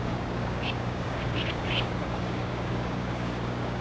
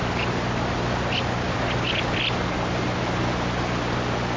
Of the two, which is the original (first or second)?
second